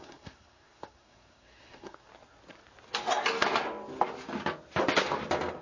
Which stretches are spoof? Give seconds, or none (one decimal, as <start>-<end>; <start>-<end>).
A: 0.0-2.1